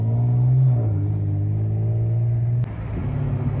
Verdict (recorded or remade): recorded